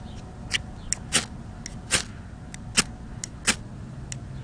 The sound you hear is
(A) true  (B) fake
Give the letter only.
A